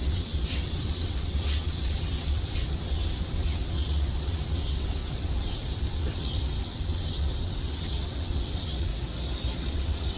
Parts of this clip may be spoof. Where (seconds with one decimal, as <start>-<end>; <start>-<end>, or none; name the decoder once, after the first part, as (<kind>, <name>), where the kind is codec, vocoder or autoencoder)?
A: 0.0-8.9 (vocoder, WaveNeXt); 9.6-10.2